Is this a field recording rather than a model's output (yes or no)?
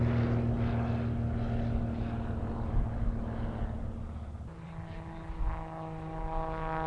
yes